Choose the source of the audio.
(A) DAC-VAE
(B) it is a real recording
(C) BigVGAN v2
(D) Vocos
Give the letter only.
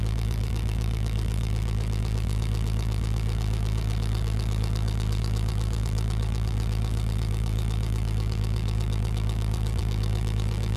C